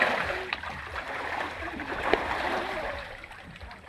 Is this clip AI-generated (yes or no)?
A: yes